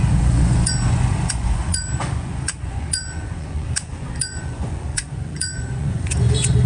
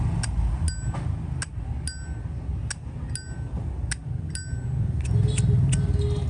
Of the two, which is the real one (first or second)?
second